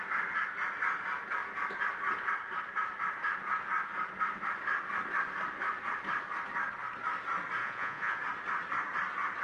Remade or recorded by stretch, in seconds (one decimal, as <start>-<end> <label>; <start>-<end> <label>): 0.0-7.6 recorded; 7.6-8.2 remade; 8.2-9.4 recorded